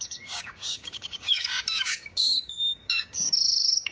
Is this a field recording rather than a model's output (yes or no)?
no